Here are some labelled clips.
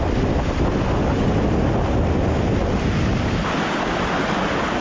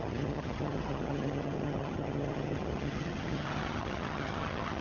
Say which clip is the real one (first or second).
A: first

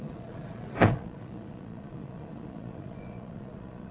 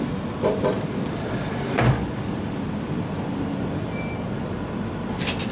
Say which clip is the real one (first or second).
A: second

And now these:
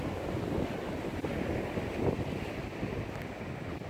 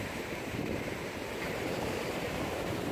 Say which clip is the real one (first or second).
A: first